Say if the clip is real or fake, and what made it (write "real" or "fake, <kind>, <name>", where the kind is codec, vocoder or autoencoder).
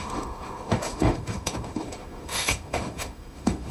fake, autoencoder, DAC-VAE